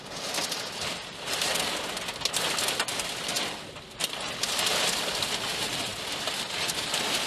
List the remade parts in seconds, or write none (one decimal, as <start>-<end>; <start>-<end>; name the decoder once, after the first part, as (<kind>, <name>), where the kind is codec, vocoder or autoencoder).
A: none